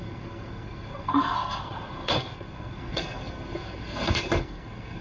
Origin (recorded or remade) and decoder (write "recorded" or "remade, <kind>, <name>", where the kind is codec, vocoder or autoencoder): remade, codec, SNAC